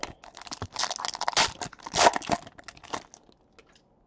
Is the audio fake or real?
real